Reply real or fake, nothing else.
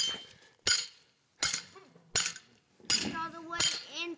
real